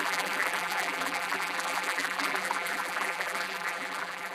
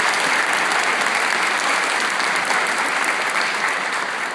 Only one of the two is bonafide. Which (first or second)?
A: second